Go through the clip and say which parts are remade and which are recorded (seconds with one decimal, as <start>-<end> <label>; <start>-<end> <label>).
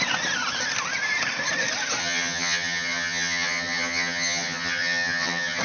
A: 0.0-2.0 recorded; 2.0-5.6 remade